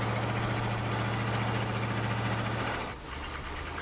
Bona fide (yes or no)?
yes